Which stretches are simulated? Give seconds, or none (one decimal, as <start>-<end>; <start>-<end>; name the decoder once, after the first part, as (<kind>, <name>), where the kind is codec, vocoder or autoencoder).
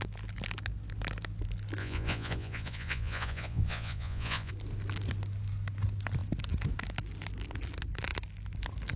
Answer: 1.8-4.5 (vocoder, Vocos)